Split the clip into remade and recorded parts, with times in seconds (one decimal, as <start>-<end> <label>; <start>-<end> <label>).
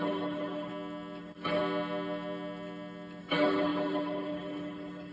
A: 0.0-0.7 remade; 0.7-1.2 recorded; 1.2-1.6 remade; 1.6-3.2 recorded; 3.2-5.1 remade